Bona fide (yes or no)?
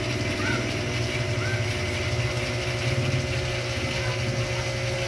yes